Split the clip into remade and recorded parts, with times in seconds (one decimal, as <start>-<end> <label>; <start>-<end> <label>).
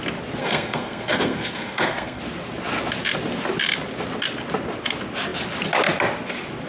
0.0-0.4 recorded; 0.4-2.2 remade; 2.2-6.7 recorded